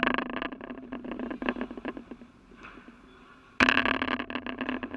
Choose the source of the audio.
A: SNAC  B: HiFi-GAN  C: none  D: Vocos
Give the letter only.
C